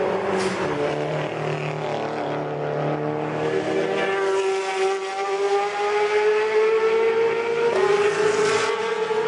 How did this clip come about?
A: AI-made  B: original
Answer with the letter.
B